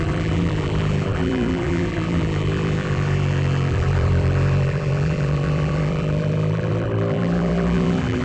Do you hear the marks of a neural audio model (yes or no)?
yes